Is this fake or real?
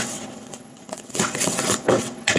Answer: fake